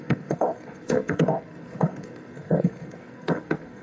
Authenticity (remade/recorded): remade